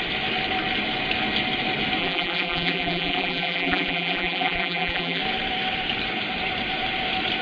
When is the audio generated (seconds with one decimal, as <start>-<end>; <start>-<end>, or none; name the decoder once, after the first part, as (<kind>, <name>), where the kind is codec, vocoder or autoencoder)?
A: 2.0-5.2 (vocoder, BigVGAN v2)